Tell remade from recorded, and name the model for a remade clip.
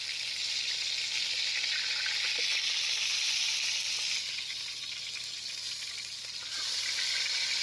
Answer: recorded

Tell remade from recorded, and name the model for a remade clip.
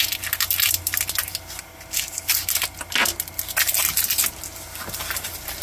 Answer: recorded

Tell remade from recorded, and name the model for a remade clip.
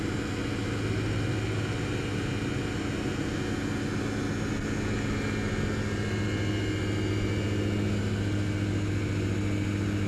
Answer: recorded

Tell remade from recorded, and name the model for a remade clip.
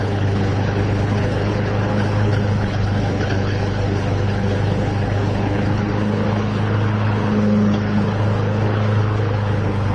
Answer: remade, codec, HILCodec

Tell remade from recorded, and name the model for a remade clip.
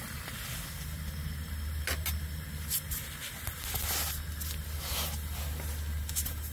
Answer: recorded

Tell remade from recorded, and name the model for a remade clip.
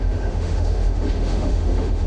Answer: remade, autoencoder, DAC-VAE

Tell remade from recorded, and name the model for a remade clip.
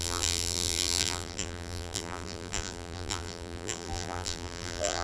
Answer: remade, vocoder, BigVGAN v2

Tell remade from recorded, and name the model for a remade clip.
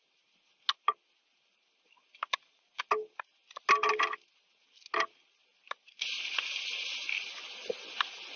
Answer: recorded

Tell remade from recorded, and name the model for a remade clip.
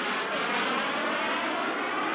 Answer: recorded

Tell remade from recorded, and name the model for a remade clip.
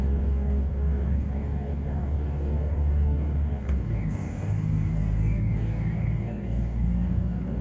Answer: remade, codec, DAC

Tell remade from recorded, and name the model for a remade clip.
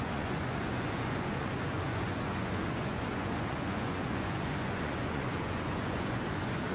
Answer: remade, vocoder, Vocos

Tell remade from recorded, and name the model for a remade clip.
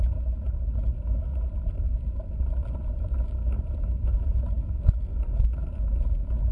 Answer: recorded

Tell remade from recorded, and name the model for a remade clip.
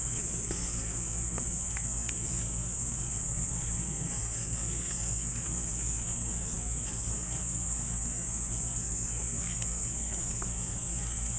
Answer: remade, codec, SNAC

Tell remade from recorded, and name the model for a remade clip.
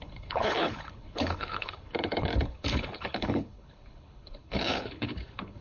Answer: remade, codec, HILCodec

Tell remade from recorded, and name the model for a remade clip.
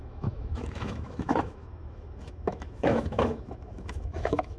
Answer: remade, autoencoder, DAC-VAE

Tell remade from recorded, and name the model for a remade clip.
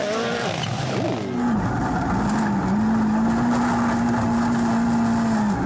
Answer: recorded